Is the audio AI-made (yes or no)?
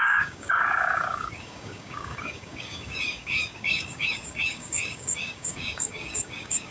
yes